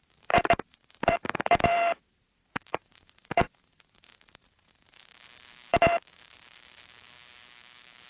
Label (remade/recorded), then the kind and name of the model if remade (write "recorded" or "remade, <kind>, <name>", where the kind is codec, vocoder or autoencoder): remade, vocoder, BigVGAN v2